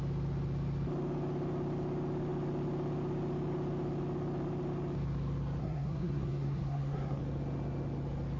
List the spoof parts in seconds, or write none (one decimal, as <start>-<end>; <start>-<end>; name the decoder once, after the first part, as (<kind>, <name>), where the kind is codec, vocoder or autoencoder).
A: 5.6-7.2 (codec, SNAC)